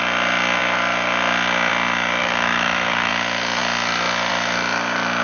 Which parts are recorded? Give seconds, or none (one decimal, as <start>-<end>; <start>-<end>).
0.0-2.2; 3.1-5.2